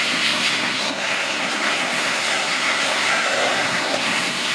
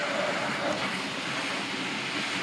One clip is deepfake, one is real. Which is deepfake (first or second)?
first